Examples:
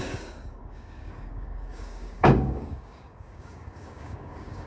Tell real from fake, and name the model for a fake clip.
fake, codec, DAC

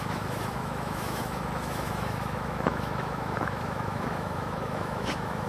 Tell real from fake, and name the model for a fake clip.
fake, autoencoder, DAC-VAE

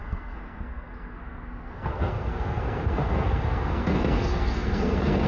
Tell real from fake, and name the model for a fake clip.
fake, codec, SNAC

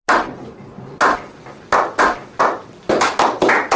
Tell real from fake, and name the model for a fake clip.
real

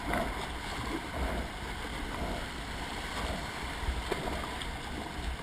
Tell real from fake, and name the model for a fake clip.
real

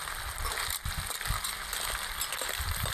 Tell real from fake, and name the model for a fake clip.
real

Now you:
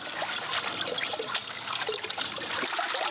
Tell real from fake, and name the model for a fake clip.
real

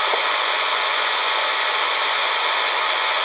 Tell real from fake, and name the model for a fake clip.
fake, vocoder, Vocos